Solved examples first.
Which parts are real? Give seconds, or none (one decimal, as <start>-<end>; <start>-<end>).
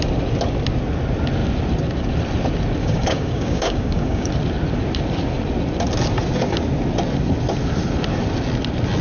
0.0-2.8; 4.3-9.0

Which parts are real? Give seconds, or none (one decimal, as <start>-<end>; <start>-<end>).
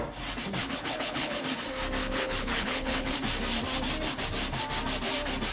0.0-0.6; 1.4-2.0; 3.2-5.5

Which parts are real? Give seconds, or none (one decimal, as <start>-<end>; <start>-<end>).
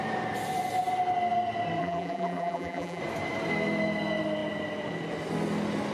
0.0-1.8; 3.0-5.9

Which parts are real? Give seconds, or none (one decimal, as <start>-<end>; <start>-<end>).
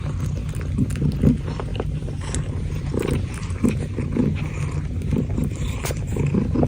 0.0-1.7; 3.6-5.1; 6.2-6.7